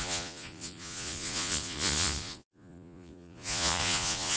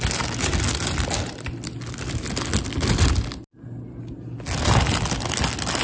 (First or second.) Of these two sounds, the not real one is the first